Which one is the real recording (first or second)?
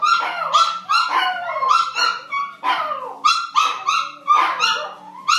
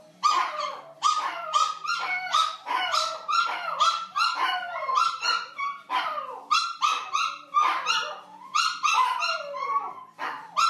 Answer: first